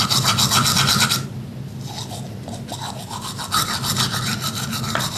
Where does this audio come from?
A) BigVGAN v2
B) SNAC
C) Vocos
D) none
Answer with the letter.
D